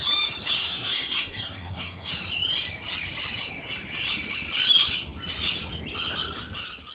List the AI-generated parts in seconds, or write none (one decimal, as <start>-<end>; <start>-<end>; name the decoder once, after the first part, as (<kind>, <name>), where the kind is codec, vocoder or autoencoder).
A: 0.6-2.1 (codec, SNAC)